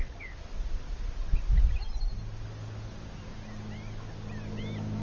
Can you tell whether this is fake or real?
real